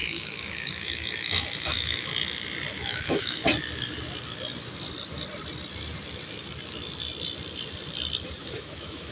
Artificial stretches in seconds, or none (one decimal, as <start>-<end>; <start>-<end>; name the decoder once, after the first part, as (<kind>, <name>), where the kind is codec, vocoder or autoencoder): 0.0-2.1 (autoencoder, DAC-VAE); 2.7-3.4; 8.4-9.1